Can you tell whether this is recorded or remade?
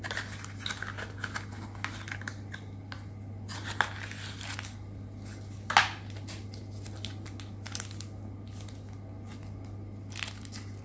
recorded